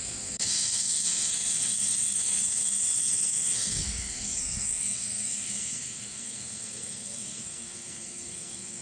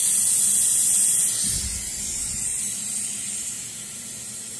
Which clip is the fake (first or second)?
first